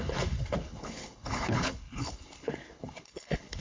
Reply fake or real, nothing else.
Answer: fake